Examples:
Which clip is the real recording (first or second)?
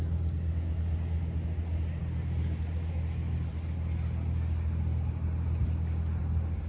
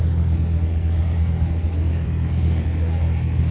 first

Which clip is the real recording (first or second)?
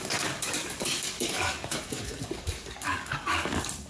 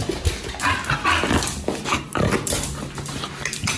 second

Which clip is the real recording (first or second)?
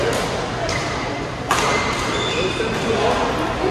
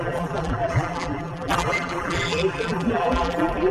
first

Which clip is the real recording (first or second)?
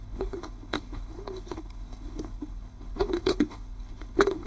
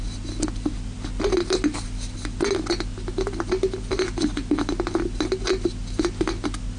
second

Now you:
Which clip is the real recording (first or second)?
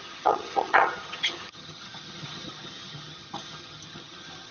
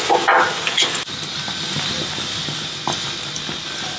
second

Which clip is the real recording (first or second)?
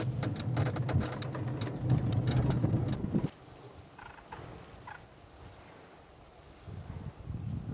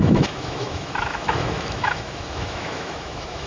first